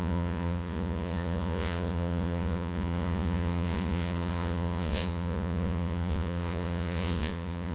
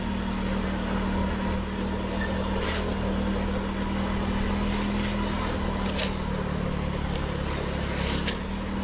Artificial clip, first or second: first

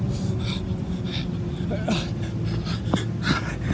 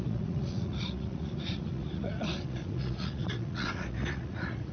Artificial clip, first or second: second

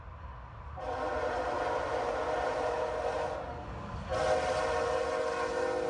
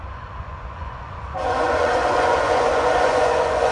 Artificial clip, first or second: second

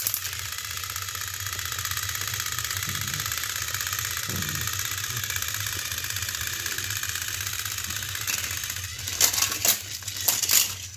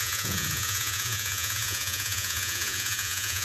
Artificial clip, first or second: second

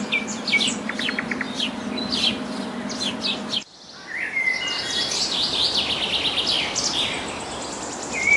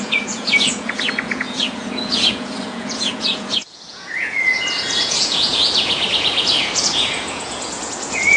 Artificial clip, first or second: second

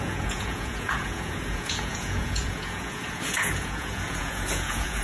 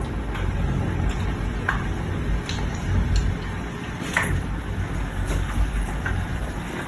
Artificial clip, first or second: first